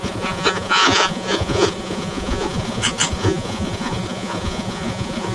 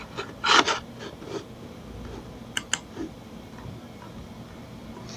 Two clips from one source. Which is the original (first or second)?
second